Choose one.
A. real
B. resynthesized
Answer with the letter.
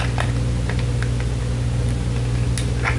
A